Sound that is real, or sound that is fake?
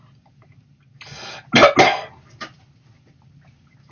real